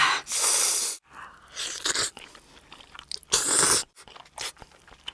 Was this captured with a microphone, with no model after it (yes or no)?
yes